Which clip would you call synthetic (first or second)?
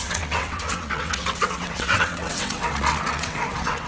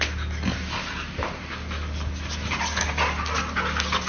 first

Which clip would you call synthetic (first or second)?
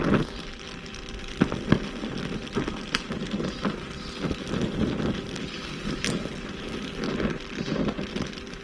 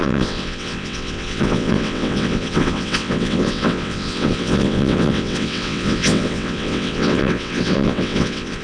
second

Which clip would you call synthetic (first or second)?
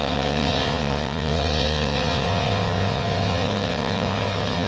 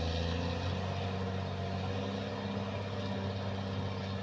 first